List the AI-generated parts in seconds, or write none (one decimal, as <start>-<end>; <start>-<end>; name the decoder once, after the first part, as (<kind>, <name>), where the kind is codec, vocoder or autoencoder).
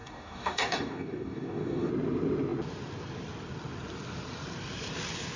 0.0-1.9 (codec, DAC)